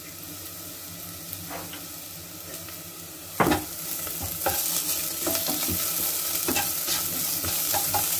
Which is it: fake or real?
real